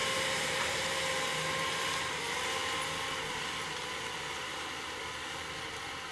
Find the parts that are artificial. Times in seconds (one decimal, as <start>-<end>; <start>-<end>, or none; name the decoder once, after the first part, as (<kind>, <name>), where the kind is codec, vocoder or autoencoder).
0.0-0.9 (vocoder, BigVGAN v2)